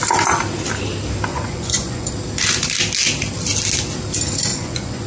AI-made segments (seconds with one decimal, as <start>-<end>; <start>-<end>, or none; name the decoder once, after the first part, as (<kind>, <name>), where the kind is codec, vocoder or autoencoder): 1.3-2.1 (vocoder, Vocos); 4.5-5.1